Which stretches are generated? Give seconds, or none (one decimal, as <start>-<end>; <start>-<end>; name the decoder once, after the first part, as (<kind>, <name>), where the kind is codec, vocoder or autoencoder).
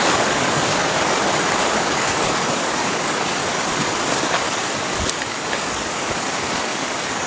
0.0-3.4 (codec, DAC); 4.2-7.3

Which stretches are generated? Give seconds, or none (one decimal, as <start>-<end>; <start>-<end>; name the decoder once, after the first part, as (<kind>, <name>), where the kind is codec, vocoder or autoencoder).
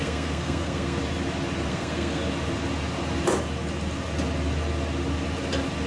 0.0-1.0 (codec, SNAC); 1.7-2.2